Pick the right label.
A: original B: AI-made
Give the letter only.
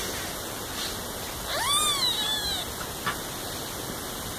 A